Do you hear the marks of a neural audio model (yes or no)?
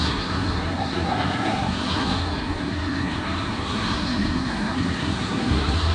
yes